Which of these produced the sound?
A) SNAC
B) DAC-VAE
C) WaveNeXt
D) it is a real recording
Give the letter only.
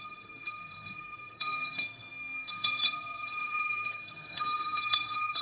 A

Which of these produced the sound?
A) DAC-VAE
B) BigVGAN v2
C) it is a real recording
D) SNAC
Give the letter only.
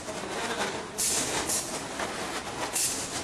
C